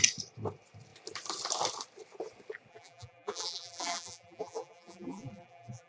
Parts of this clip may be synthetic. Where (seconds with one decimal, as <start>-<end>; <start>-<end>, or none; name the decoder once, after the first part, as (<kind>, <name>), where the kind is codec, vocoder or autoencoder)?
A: 2.7-5.9 (vocoder, BigVGAN v2)